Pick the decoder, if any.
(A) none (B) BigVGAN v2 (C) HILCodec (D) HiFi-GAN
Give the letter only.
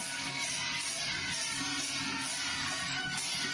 A